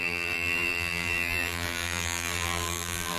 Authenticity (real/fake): fake